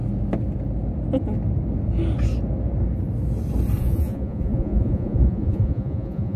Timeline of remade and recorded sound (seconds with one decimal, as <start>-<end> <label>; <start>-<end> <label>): 0.0-3.8 recorded; 3.8-6.4 remade